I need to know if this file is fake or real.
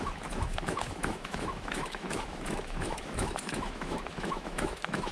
fake